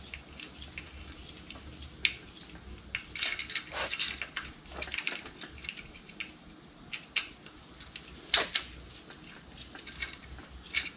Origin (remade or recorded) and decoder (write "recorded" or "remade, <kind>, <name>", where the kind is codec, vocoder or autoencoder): recorded